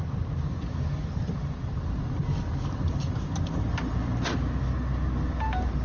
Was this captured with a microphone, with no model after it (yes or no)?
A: yes